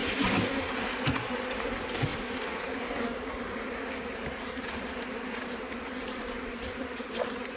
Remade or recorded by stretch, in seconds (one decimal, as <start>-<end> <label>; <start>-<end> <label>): 0.0-7.6 recorded